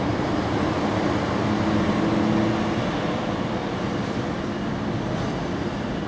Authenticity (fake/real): real